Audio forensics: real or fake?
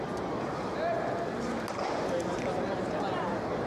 real